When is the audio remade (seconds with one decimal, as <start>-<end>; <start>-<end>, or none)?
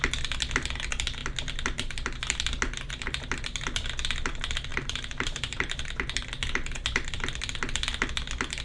4.7-5.8